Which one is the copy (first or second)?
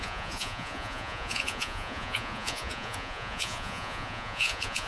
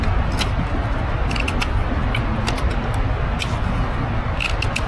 first